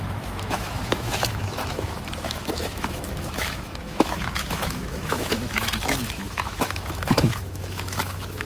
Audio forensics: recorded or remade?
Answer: remade